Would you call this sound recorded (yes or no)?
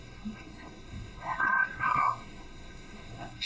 no